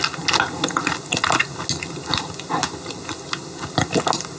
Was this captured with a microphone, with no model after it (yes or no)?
yes